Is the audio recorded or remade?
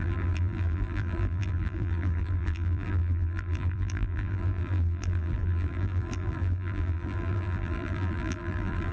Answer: remade